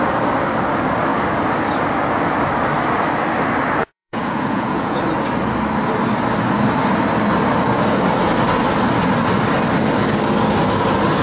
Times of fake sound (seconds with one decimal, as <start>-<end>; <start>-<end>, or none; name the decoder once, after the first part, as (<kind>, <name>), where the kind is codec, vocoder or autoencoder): 3.8-5.0 (vocoder, Vocos)